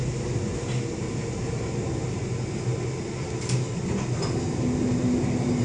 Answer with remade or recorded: recorded